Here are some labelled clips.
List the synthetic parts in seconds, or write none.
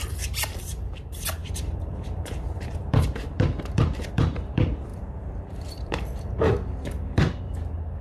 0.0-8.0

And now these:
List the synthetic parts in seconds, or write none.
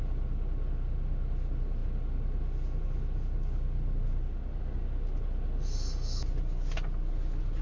none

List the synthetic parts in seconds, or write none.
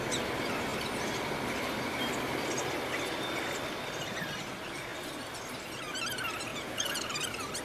6.5-7.1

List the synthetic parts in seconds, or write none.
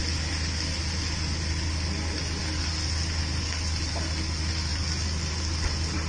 none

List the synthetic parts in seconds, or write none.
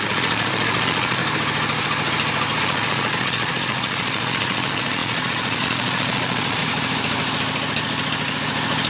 0.0-1.2; 2.6-6.6